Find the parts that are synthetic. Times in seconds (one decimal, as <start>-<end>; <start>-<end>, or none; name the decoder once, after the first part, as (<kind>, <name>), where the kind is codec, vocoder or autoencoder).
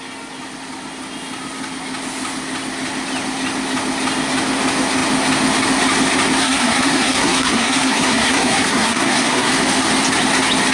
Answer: 6.4-9.5 (codec, SNAC)